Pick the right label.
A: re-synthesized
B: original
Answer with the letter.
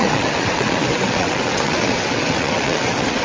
A